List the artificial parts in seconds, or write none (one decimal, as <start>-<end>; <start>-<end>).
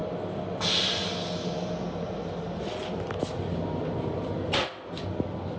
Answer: none